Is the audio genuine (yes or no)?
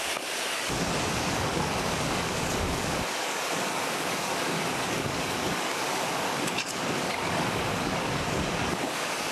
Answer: no